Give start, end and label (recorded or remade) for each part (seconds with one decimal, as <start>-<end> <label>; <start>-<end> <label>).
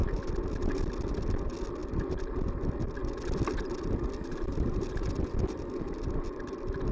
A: 0.0-6.9 recorded